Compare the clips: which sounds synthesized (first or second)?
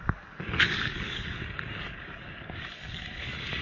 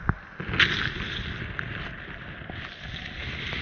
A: first